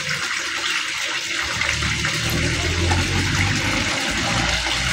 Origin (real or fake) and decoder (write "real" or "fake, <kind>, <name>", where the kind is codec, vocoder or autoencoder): real